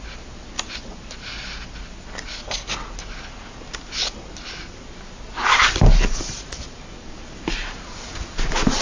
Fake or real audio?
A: real